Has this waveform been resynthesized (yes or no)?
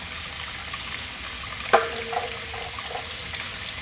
no